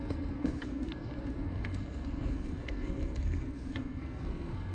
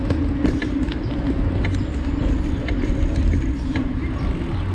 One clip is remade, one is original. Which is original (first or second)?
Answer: second